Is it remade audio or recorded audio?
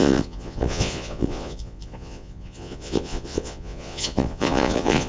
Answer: remade